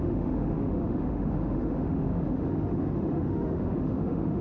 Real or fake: fake